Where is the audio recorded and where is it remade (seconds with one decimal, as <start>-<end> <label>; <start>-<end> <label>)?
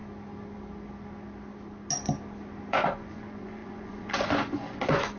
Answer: 0.0-2.7 recorded; 2.7-5.2 remade